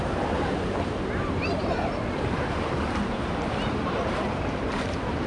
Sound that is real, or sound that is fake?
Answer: fake